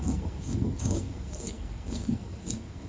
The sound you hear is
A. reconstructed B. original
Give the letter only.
A